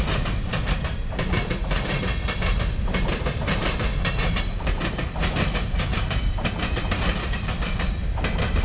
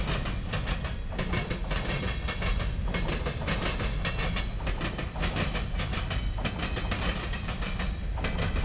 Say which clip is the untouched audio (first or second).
second